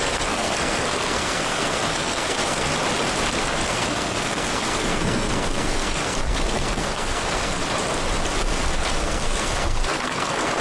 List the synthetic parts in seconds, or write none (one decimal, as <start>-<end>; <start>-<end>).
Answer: 0.0-2.7; 3.4-7.6; 8.4-10.6